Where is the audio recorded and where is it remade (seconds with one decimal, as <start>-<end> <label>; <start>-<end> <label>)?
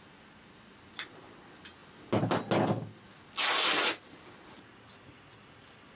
0.0-6.0 recorded